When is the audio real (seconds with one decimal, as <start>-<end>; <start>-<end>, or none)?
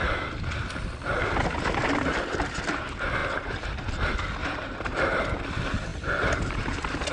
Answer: 0.0-4.4; 5.2-5.9